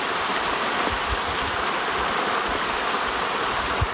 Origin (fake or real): fake